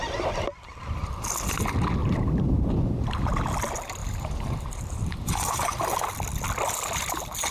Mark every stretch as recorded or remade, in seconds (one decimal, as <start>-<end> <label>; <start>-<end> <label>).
0.0-2.0 recorded; 2.0-3.1 remade; 3.1-4.0 recorded; 4.0-6.1 remade; 6.1-7.5 recorded